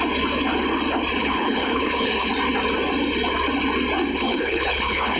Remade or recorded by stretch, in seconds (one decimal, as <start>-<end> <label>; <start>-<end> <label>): 0.0-1.2 recorded; 1.2-2.3 remade; 2.3-4.1 recorded; 4.1-5.2 remade